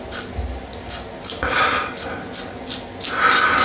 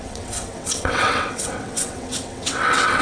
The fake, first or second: second